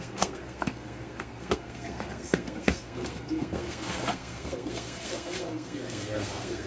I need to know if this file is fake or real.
fake